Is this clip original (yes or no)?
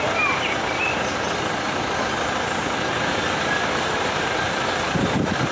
yes